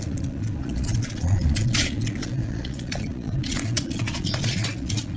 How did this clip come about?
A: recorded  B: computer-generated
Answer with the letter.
B